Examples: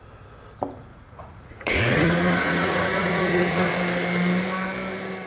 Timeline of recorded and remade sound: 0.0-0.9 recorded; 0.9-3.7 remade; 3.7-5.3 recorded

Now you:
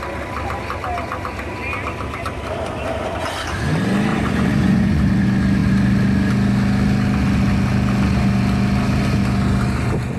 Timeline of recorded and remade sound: 0.0-4.1 recorded; 4.1-5.0 remade; 5.0-10.2 recorded

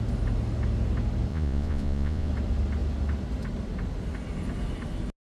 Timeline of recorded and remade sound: 0.0-1.3 recorded; 1.3-2.3 remade; 2.3-5.2 recorded